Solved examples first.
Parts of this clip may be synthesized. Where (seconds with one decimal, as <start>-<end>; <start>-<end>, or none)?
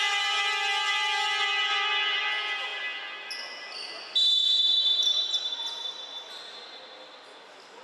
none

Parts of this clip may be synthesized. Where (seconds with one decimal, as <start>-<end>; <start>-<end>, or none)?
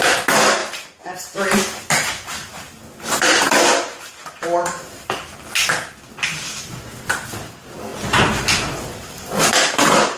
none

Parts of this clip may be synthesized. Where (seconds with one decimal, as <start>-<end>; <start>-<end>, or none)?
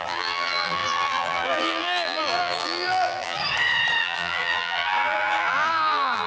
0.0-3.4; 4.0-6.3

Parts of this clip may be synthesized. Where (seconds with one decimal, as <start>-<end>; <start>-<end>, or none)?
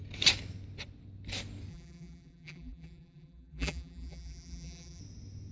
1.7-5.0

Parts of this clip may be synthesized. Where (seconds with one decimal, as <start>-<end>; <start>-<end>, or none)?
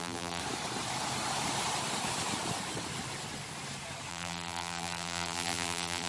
0.0-0.4; 4.1-6.1